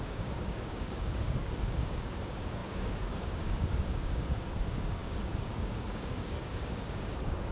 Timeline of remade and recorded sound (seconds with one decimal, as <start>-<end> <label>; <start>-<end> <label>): 0.0-7.5 remade